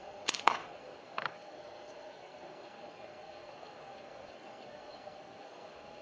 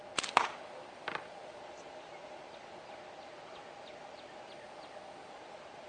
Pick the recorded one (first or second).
second